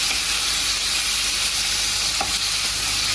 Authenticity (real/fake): real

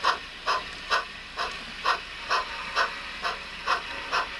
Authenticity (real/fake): real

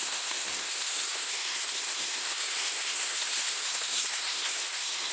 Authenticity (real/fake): fake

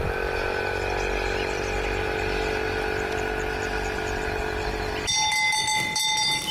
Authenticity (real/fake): real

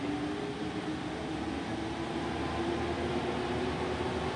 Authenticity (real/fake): real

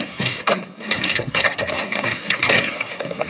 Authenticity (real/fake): fake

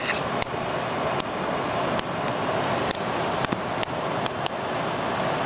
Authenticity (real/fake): real